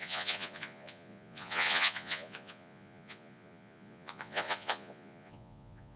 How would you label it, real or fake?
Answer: fake